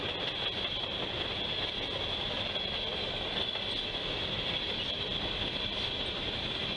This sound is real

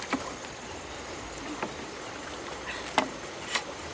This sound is real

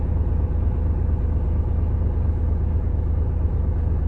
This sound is real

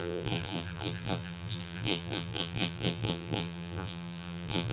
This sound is fake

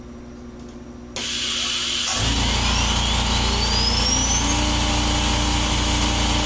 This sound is real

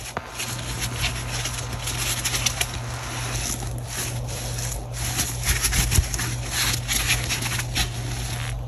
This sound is real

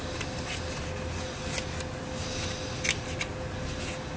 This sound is real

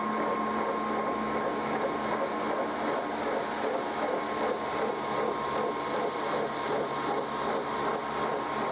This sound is real